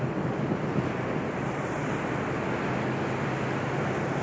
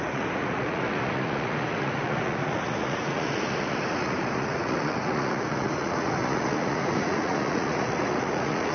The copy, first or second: second